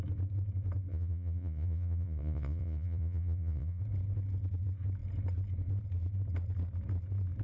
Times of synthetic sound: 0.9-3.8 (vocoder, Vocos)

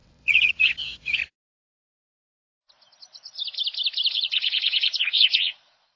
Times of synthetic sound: 0.0-1.2 (vocoder, Vocos); 4.1-6.0

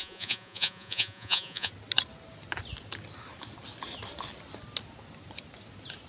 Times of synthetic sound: 0.0-1.7 (vocoder, Vocos)